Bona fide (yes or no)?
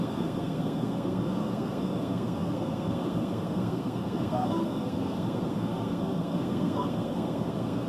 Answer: no